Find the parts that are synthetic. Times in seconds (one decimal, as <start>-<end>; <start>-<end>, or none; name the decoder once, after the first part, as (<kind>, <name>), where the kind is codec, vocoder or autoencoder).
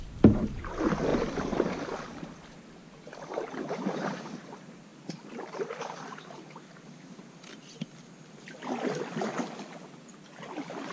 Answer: none